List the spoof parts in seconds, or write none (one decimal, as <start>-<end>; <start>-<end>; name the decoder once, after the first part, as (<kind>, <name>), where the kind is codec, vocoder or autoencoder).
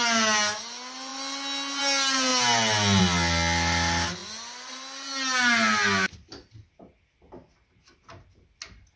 none